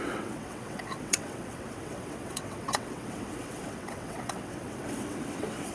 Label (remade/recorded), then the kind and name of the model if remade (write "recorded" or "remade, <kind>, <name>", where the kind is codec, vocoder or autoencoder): remade, vocoder, WaveNeXt